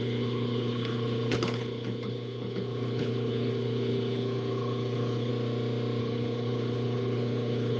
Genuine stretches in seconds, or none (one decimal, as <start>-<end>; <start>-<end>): 5.3-6.0

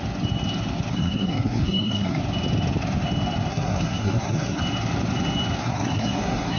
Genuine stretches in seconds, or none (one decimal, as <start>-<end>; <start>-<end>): 0.0-0.9; 2.2-3.5; 4.6-5.6

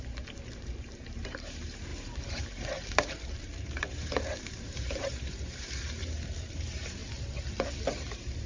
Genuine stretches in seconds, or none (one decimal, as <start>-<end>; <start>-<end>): 7.0-7.9

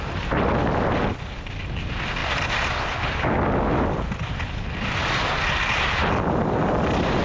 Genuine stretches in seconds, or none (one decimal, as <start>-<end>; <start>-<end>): 0.0-7.2

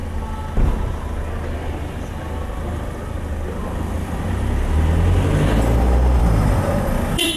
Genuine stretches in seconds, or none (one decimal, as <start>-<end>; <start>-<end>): 0.0-6.2

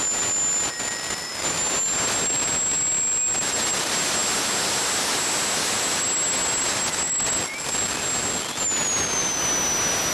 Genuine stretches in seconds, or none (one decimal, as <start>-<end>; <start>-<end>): 0.0-10.1